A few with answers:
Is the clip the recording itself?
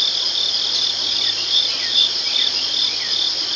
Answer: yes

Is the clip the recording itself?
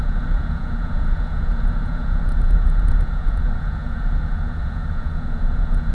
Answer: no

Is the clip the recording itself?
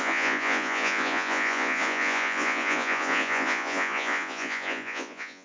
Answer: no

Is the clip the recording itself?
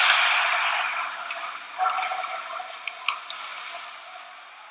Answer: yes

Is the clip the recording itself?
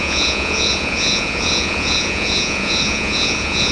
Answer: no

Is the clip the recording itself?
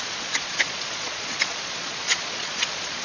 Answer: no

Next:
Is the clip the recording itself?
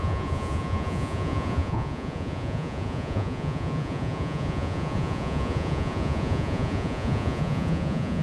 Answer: no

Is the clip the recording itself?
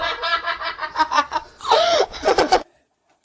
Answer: no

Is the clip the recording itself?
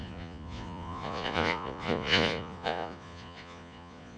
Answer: no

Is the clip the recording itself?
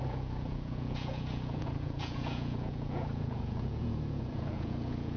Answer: no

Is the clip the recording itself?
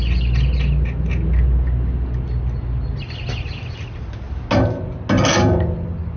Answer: yes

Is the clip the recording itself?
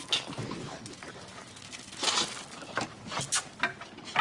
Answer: yes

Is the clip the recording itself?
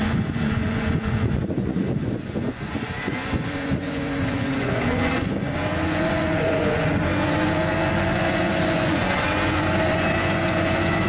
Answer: no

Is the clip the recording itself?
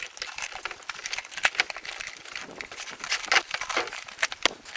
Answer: yes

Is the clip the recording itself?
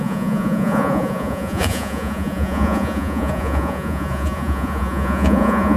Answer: no